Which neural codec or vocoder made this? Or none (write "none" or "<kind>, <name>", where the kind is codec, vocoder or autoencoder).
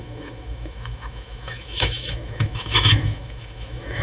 autoencoder, DAC-VAE